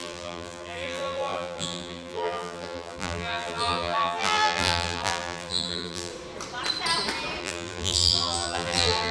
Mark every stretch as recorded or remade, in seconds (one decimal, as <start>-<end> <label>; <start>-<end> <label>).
0.0-6.1 remade; 6.1-7.4 recorded; 7.4-9.1 remade